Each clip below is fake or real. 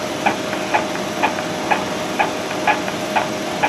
real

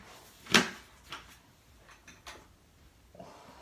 real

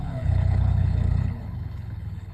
fake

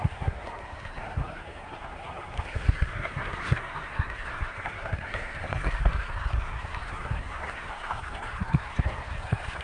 fake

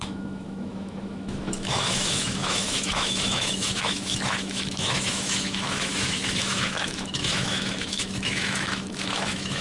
fake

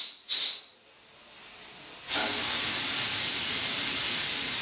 real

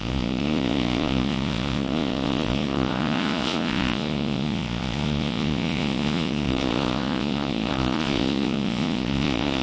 fake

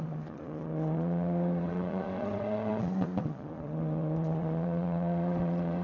fake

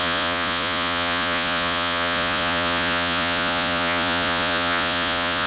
fake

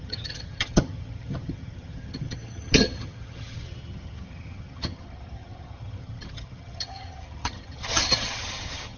fake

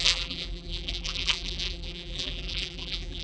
fake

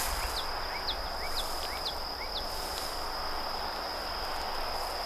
real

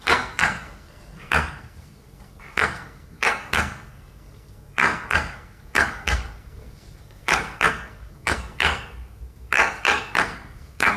fake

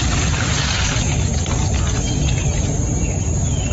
real